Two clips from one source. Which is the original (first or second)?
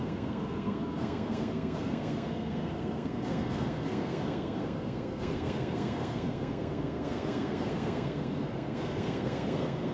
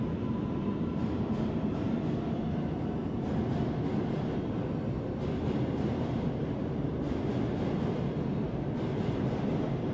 second